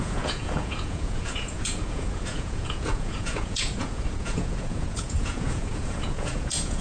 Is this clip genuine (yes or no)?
no